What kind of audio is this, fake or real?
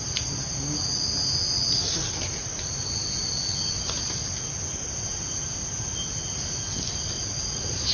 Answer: real